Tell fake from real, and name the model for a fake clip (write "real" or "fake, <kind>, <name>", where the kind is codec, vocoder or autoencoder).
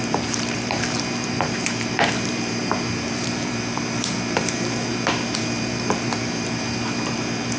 fake, vocoder, BigVGAN v2